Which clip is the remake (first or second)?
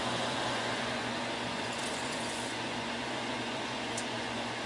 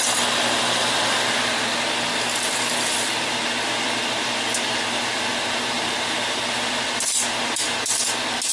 first